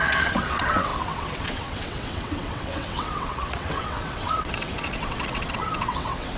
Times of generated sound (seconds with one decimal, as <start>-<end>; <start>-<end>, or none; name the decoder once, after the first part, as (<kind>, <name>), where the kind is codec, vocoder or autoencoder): 0.0-6.4 (vocoder, WaveNeXt)